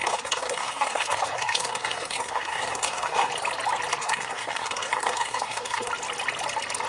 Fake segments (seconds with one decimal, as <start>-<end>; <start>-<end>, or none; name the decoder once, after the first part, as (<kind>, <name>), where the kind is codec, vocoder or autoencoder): 0.0-3.3 (codec, SNAC); 4.0-5.9